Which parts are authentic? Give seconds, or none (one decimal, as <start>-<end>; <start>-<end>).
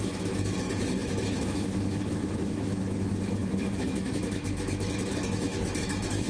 none